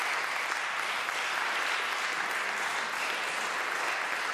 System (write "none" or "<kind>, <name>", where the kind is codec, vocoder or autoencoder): none